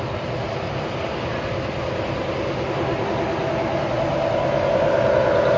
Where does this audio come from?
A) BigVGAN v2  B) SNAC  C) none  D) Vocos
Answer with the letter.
C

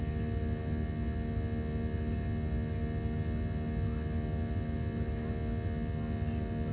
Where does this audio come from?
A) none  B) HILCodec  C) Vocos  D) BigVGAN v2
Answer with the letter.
A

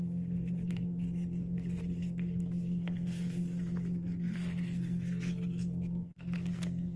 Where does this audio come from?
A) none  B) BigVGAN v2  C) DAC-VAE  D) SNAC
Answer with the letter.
D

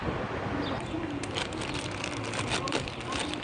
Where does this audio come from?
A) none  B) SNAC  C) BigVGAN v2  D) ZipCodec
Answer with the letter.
C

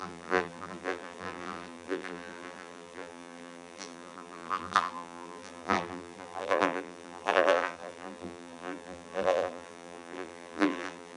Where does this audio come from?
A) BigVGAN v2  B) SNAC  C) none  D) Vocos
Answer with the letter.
A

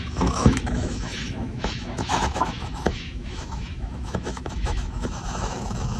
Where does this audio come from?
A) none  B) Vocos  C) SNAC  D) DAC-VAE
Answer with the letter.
D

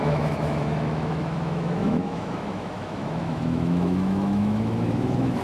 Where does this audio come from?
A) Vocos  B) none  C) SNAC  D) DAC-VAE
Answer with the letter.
D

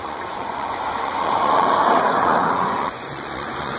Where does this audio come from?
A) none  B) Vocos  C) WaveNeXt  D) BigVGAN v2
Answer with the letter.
B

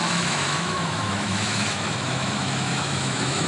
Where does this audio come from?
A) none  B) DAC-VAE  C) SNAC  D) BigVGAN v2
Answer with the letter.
B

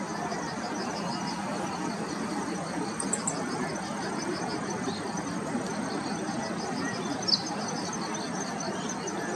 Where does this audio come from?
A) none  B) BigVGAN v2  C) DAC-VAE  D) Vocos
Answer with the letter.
A